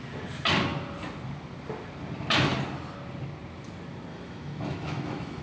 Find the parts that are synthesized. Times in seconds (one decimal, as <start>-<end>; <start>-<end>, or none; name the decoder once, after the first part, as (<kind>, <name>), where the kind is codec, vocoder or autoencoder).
4.1-5.4 (autoencoder, DAC-VAE)